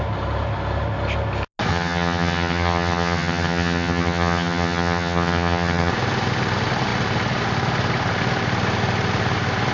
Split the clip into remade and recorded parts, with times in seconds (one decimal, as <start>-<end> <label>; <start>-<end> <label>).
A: 0.0-1.7 recorded; 1.7-5.9 remade; 5.9-9.7 recorded